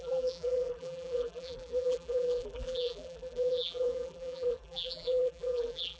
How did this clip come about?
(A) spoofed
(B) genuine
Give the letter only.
A